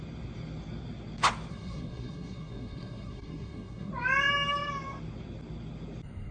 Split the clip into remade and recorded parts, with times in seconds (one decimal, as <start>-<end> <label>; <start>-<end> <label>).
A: 0.0-1.5 recorded; 1.5-3.9 remade; 3.9-6.3 recorded